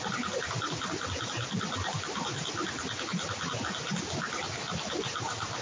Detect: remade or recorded recorded